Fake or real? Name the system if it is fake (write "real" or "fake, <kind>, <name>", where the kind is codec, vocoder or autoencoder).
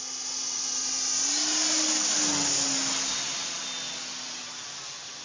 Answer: real